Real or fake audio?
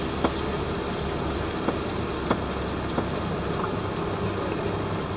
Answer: real